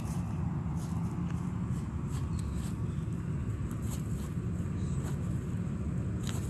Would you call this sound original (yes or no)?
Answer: yes